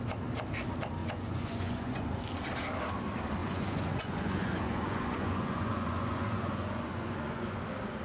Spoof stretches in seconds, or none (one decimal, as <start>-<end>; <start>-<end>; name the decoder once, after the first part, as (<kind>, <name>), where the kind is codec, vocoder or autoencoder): 1.0-2.1 (vocoder, Vocos); 3.4-7.6